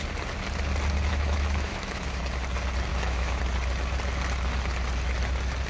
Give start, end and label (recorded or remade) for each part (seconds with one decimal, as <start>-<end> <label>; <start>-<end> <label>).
0.0-1.1 recorded; 1.1-2.2 remade; 2.2-2.9 recorded; 2.9-3.4 remade; 3.4-5.7 recorded